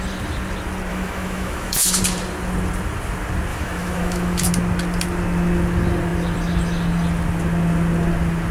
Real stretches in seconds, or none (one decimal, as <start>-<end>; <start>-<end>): 0.0-0.9; 2.0-3.5; 4.5-8.5